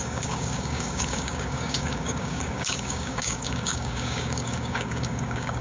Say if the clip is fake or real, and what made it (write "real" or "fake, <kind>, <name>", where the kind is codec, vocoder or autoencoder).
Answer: fake, codec, DAC